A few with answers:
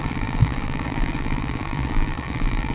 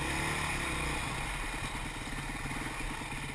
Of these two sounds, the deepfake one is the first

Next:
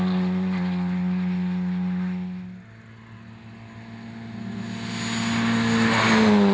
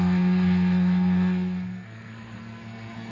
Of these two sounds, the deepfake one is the second